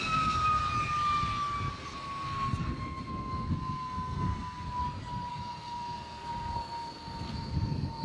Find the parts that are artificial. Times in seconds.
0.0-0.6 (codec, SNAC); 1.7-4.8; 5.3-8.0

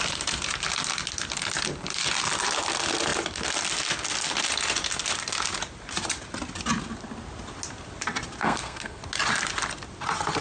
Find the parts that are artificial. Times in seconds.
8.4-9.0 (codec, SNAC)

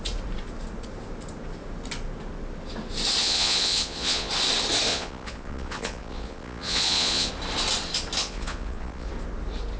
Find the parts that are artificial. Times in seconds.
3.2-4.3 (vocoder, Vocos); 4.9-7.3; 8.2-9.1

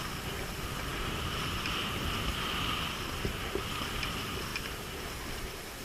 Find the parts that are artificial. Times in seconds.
none

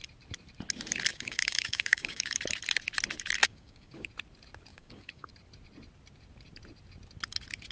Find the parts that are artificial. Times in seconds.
1.1-2.4 (codec, DAC); 3.4-4.1; 4.7-5.3

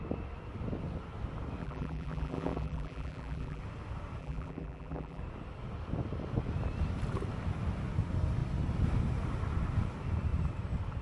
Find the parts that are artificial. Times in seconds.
1.6-3.6 (vocoder, BigVGAN v2); 4.2-5.2

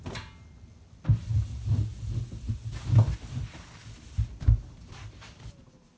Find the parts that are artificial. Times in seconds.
none

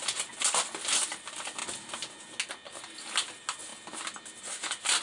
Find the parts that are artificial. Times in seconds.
none